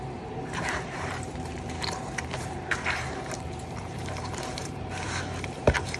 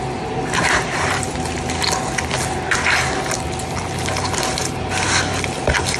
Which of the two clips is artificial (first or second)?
first